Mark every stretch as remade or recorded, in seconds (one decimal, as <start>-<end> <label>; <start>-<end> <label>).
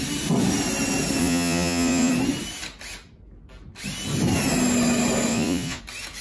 0.0-1.2 recorded; 1.2-2.1 remade; 2.1-5.3 recorded; 5.3-5.8 remade; 5.8-6.2 recorded